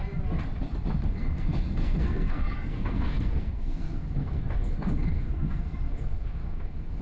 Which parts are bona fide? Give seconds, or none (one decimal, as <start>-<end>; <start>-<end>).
0.0-1.1